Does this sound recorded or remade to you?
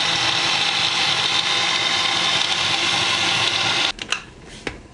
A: recorded